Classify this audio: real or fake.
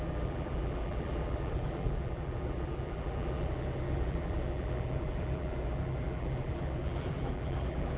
fake